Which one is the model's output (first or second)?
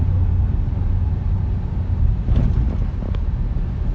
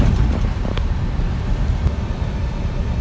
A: second